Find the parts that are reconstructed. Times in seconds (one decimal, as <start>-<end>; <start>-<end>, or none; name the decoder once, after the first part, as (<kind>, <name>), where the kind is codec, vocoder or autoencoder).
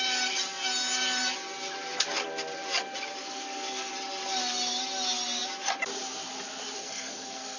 3.2-3.9 (codec, SNAC); 6.8-7.6